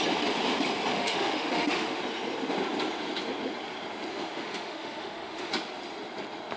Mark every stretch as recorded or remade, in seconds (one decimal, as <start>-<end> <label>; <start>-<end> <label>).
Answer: 0.0-0.9 recorded; 0.9-2.0 remade; 2.0-4.1 recorded; 4.1-5.5 remade; 5.5-6.6 recorded